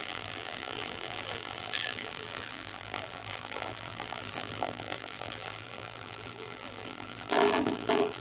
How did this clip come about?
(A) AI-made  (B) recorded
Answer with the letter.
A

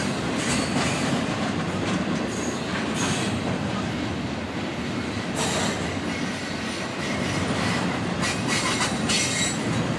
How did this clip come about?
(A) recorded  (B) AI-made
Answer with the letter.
A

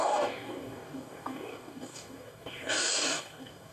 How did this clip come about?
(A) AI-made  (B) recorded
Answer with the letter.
A